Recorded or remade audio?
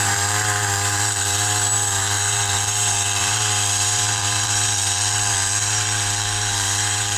remade